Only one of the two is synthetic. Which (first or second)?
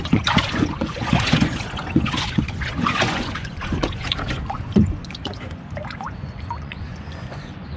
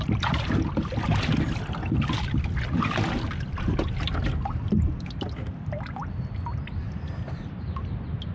first